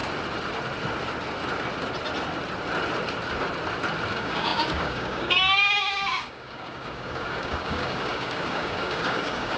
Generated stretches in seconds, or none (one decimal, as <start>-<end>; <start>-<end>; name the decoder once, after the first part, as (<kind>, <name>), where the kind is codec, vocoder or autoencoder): 4.1-9.6 (codec, DAC)